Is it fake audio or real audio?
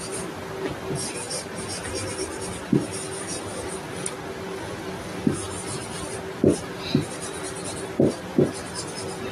real